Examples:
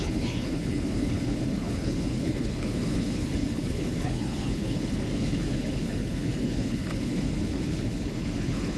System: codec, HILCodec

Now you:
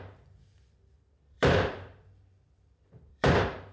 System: vocoder, BigVGAN v2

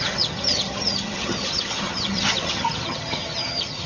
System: vocoder, HiFi-GAN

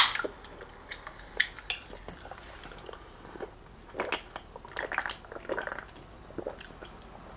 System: none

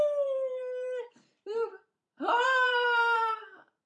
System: vocoder, BigVGAN v2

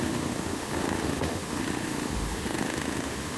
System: autoencoder, DAC-VAE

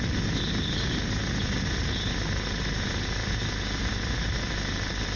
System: none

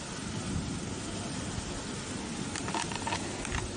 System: none